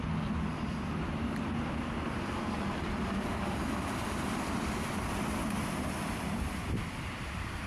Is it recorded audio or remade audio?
remade